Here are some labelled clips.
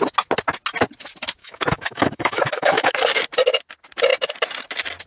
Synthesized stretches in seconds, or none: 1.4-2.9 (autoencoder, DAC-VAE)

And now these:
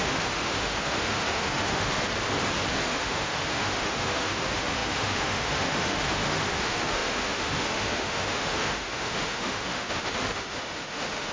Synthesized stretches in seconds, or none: 0.0-2.1 (autoencoder, DAC-VAE); 2.7-11.3

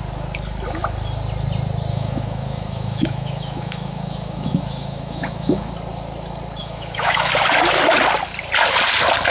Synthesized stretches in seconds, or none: 1.9-5.7 (autoencoder, DAC-VAE); 6.6-7.3

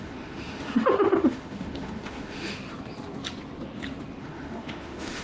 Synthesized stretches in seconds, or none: 0.0-2.6 (autoencoder, DAC-VAE); 4.2-5.2

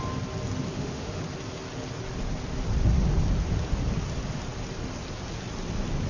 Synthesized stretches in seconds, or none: 0.7-1.2 (autoencoder, DAC-VAE)